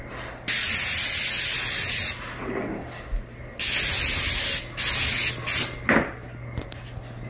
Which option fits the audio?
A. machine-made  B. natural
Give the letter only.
B